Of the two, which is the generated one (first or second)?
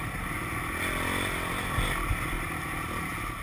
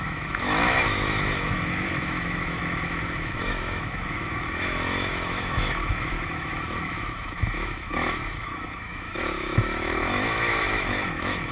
second